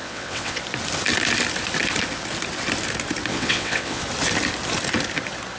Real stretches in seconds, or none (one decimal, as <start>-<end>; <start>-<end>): 0.6-3.3; 4.0-5.6

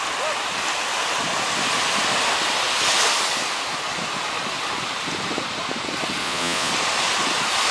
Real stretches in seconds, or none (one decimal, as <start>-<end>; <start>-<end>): 0.0-6.2; 6.7-7.7